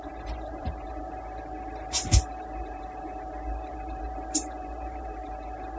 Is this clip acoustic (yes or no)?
no